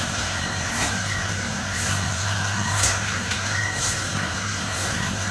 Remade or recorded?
remade